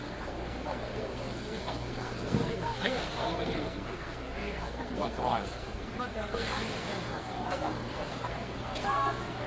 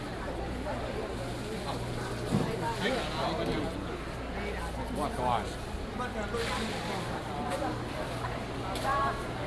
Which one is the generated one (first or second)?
first